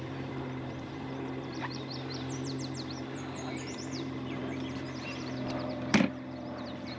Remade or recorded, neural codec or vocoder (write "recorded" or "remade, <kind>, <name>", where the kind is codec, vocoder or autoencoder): remade, vocoder, BigVGAN v2